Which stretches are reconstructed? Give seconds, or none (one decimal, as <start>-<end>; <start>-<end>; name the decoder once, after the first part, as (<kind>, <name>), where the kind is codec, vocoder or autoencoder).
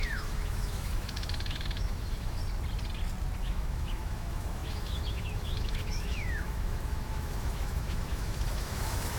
0.0-2.4 (autoencoder, DAC-VAE); 3.4-9.2